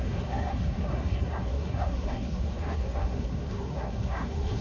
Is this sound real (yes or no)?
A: no